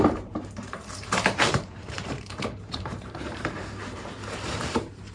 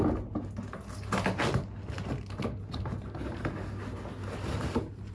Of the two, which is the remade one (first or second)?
first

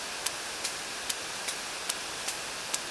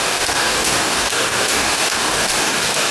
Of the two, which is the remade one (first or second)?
second